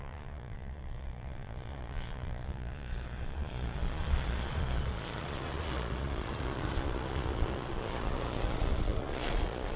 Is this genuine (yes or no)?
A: no